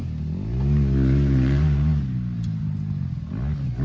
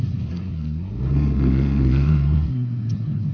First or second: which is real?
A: first